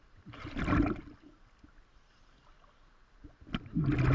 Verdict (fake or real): real